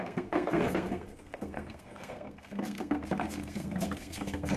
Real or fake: fake